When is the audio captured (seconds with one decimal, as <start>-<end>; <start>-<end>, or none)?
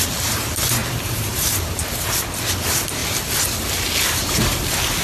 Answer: 0.0-5.0